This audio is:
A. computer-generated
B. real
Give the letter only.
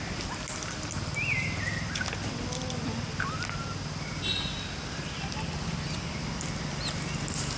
B